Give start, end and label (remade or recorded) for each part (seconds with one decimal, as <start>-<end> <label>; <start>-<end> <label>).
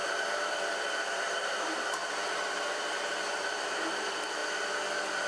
0.0-4.4 remade; 4.4-5.3 recorded